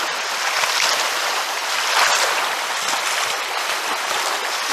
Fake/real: real